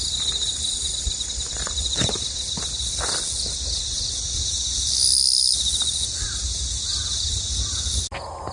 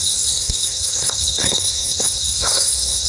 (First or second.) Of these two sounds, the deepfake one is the second